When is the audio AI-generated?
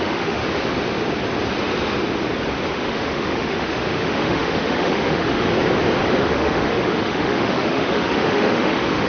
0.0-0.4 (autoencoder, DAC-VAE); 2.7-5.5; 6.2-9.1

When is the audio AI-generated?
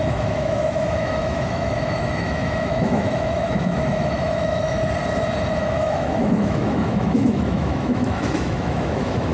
0.0-4.8 (autoencoder, DAC-VAE); 5.6-9.3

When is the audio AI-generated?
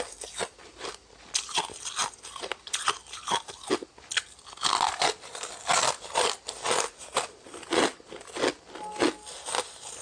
none